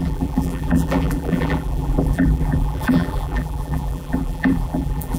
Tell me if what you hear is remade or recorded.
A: remade